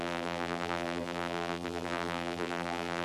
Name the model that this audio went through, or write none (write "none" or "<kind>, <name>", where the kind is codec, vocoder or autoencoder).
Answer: vocoder, BigVGAN v2